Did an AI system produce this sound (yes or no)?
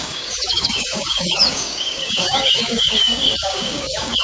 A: yes